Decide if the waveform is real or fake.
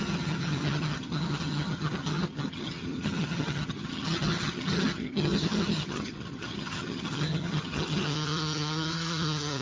fake